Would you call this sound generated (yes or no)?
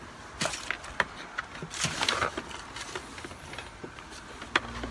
no